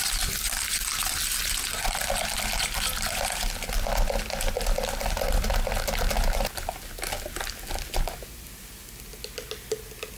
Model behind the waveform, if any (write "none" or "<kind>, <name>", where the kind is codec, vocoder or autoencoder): none